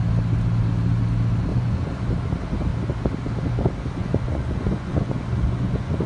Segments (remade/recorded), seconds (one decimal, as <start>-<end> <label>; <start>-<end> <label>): 0.0-1.5 recorded; 1.5-2.1 remade; 2.1-4.0 recorded; 4.0-6.1 remade